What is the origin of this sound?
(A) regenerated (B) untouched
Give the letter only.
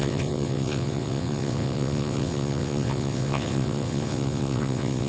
A